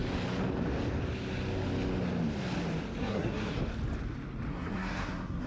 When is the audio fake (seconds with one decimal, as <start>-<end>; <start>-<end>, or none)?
3.0-3.6; 4.5-5.5